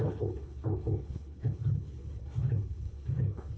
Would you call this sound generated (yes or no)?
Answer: yes